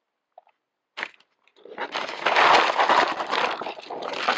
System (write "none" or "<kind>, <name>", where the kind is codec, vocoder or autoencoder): none